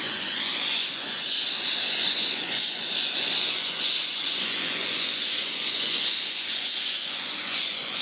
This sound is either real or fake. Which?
fake